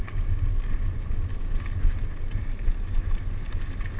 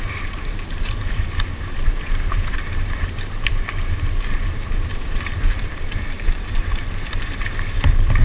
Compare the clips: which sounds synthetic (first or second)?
second